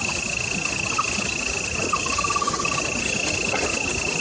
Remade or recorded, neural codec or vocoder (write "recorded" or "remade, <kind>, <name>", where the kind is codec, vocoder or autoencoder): recorded